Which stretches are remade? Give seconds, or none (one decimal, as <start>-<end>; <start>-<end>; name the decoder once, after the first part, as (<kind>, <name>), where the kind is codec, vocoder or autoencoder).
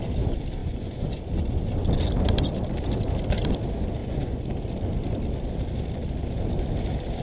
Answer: 0.6-1.2 (vocoder, Vocos); 4.0-4.5